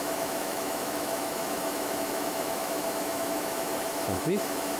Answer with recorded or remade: remade